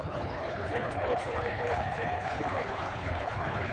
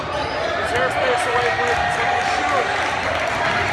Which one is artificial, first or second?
first